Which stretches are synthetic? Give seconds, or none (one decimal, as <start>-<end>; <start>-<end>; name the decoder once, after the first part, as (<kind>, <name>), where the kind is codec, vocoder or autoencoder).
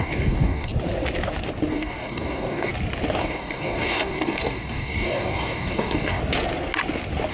0.0-0.7 (codec, DAC); 1.7-2.7; 3.2-6.2